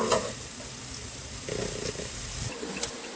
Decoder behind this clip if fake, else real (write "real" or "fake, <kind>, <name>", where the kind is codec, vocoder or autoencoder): real